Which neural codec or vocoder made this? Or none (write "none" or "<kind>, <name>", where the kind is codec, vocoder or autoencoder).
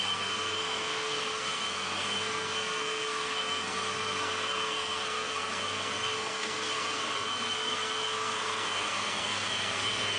codec, SNAC